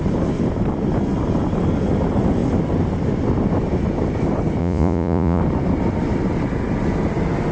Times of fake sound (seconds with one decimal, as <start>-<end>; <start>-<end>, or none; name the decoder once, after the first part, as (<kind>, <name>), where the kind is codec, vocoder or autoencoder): 4.6-5.4 (vocoder, Vocos)